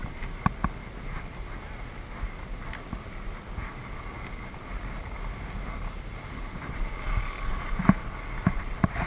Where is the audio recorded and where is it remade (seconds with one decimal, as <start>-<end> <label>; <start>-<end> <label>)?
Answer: 0.0-9.1 recorded